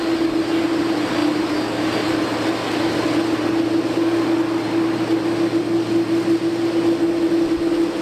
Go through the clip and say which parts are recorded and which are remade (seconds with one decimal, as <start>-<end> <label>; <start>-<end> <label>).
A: 0.0-8.0 recorded